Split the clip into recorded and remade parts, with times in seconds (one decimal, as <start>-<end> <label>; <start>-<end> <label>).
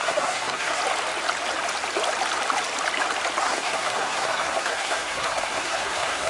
0.0-0.8 remade; 0.8-3.4 recorded; 3.4-6.3 remade